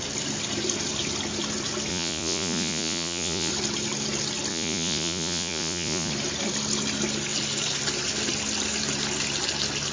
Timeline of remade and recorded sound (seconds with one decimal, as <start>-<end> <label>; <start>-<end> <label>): 0.0-1.9 recorded; 1.9-3.5 remade; 3.5-4.5 recorded; 4.5-6.1 remade; 6.1-9.9 recorded